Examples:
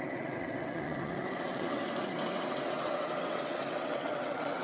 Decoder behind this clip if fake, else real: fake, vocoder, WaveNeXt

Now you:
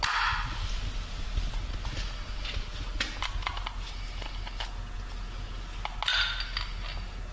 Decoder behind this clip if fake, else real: real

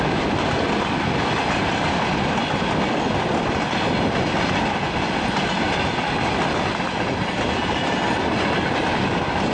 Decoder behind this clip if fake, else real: real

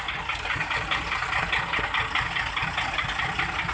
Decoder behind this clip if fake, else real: real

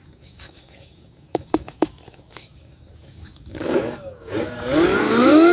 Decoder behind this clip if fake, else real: fake, codec, DAC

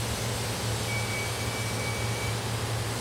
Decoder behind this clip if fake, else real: real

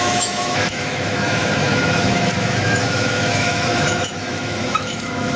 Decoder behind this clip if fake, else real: fake, autoencoder, DAC-VAE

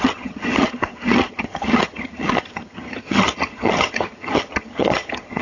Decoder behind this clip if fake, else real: fake, vocoder, HiFi-GAN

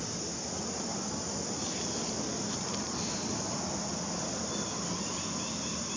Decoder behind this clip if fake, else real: real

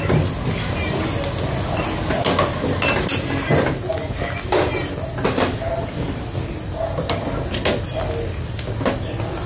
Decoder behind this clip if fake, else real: real